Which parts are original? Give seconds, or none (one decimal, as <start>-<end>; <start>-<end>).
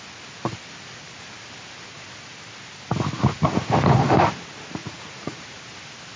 0.0-4.8; 5.4-6.2